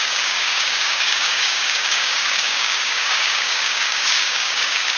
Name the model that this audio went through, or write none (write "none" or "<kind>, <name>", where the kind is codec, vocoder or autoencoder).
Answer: codec, DAC